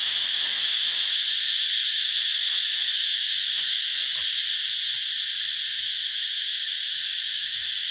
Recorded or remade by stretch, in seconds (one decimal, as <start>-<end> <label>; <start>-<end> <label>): 0.0-4.0 remade; 4.0-5.7 recorded; 5.7-7.9 remade